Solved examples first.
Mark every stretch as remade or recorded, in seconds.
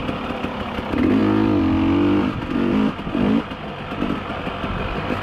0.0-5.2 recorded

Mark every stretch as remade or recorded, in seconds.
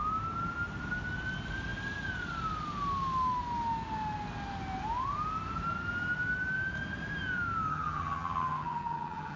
0.0-7.7 recorded; 7.7-9.4 remade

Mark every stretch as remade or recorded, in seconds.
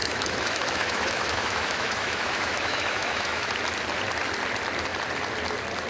0.0-3.5 remade; 3.5-5.9 recorded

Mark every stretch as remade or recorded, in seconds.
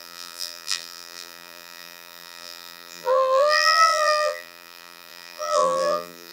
0.0-6.3 remade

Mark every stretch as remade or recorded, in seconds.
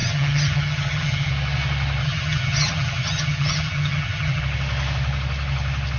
0.0-1.3 remade; 1.3-2.0 recorded; 2.0-4.4 remade; 4.4-6.0 recorded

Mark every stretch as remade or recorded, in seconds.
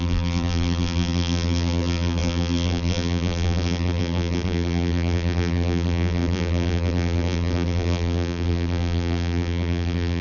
0.0-10.2 remade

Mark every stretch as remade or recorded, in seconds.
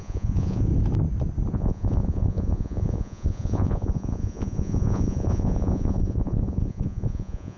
0.0-0.7 remade; 0.7-1.5 recorded; 1.5-7.6 remade